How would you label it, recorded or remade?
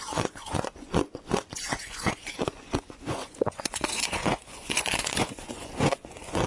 remade